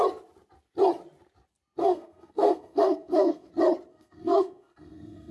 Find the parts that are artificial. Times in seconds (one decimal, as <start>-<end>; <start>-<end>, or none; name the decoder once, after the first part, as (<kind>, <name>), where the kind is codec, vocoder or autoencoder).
1.8-3.5 (codec, SNAC); 3.9-5.3